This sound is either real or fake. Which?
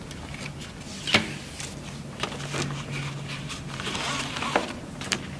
real